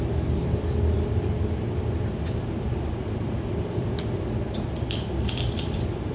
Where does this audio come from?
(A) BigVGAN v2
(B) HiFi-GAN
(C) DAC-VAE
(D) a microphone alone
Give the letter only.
A